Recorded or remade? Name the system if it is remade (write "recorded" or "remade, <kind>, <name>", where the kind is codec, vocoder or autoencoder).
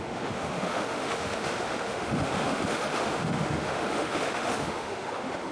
remade, autoencoder, DAC-VAE